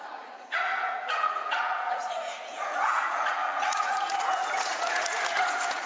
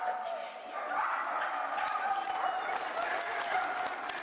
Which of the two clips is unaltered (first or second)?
second